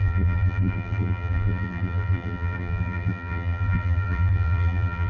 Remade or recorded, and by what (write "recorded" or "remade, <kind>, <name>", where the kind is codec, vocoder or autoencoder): remade, vocoder, BigVGAN v2